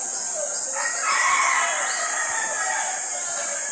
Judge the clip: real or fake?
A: real